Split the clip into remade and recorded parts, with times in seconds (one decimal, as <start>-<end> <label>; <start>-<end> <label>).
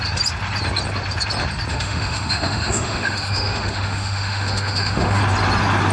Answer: 0.0-1.7 recorded; 1.7-5.2 remade; 5.2-5.9 recorded